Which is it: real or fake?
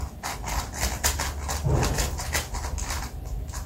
real